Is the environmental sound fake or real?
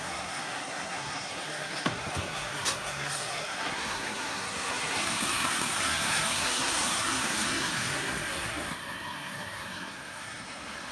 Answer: fake